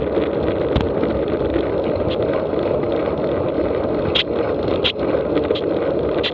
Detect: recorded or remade recorded